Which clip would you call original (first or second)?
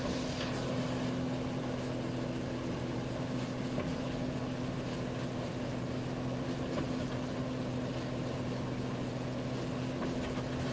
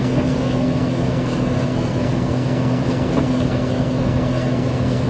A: first